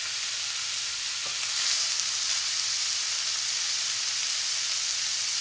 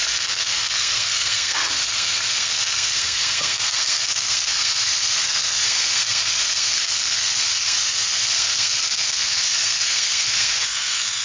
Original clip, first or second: first